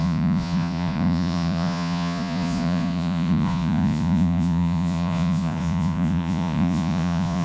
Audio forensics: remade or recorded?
remade